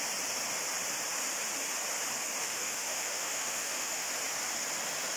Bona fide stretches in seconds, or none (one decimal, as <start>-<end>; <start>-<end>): 0.0-2.4; 4.1-5.2